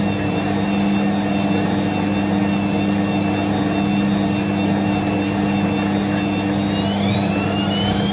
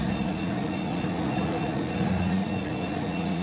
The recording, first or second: first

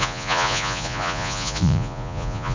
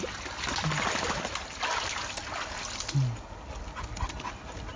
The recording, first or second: second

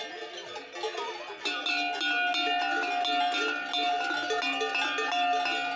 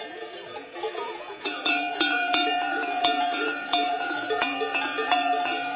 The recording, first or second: first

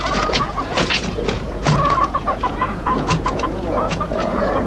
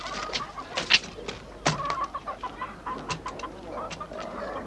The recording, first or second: second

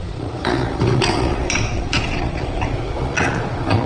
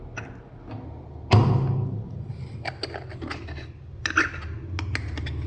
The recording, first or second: second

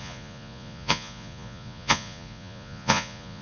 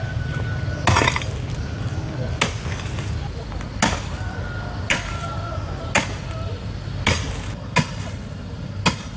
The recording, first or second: second